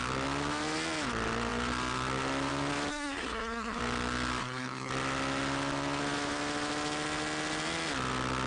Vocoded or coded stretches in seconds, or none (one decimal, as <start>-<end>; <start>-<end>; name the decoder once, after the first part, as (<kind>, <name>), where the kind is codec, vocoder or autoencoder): 2.9-3.8 (codec, SNAC); 4.4-4.9